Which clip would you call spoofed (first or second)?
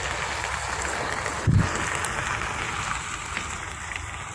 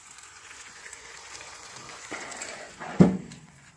second